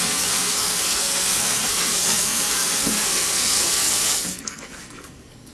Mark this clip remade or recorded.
remade